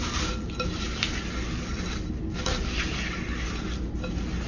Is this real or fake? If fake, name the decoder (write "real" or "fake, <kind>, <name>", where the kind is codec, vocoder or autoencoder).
real